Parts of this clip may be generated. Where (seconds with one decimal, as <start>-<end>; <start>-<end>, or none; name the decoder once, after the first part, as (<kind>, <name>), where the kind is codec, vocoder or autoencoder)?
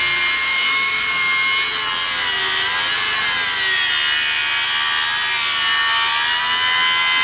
0.5-1.1 (autoencoder, DAC-VAE)